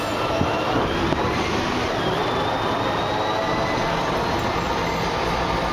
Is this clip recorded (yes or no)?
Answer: yes